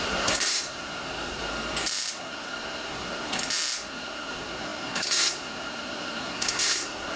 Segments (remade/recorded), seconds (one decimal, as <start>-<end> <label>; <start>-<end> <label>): 0.0-1.5 remade; 1.5-2.2 recorded; 2.2-3.4 remade; 3.4-3.9 recorded; 3.9-7.2 remade